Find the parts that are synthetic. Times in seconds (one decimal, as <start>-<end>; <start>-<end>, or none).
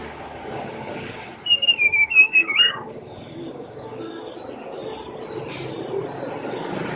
0.0-4.2